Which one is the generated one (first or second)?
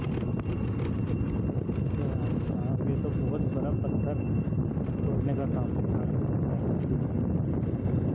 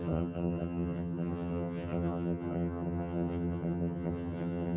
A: second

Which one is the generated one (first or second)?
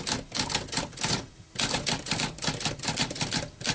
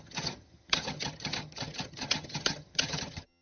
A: second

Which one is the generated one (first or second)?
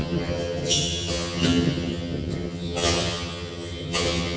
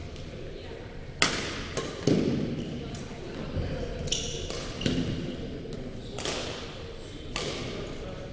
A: first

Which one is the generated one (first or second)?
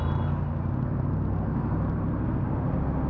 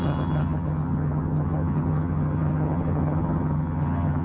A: second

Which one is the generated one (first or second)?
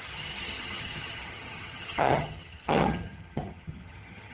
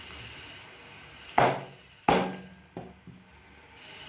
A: first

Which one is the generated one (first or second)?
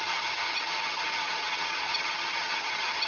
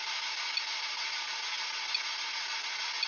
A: first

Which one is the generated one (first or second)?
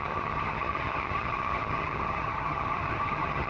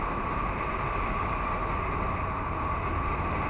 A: first